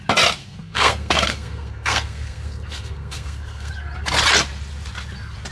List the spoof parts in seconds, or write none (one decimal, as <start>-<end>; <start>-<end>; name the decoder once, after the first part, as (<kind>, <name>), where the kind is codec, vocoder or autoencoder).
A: 0.4-3.7 (codec, SNAC)